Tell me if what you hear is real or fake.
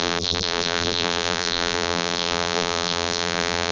fake